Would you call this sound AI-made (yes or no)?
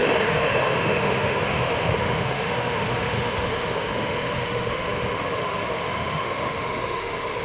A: yes